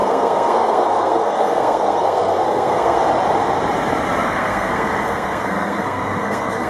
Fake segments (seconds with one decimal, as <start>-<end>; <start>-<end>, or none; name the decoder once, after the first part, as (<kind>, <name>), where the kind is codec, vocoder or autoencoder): 0.0-3.0 (codec, SNAC); 4.2-6.7